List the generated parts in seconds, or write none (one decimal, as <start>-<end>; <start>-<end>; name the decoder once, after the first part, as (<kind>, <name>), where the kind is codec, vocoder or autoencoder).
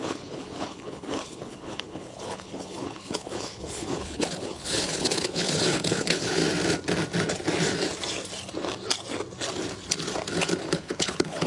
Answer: 0.0-6.4 (codec, HILCodec); 10.6-11.5